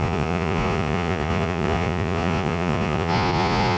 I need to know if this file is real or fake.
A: fake